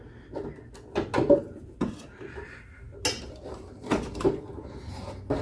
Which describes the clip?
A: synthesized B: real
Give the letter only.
B